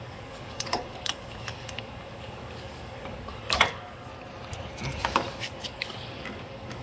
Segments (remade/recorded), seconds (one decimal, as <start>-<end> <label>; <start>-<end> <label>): 0.0-4.1 remade; 4.1-5.1 recorded; 5.1-6.8 remade